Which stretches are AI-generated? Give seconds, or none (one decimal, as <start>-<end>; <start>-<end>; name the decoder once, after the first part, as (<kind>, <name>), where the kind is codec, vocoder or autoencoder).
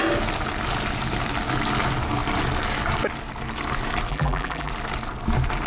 4.1-4.7 (vocoder, BigVGAN v2)